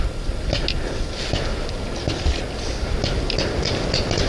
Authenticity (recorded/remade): recorded